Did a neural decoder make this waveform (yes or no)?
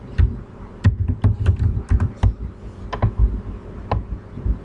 no